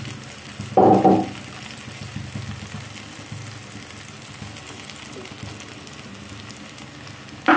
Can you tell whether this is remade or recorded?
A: recorded